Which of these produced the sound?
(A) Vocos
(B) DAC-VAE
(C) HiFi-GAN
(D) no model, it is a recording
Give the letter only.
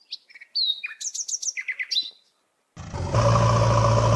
D